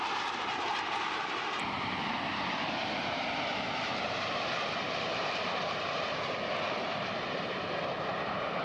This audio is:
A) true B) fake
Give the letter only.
B